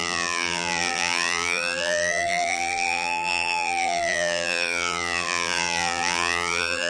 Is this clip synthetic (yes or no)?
yes